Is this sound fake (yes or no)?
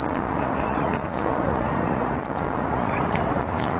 yes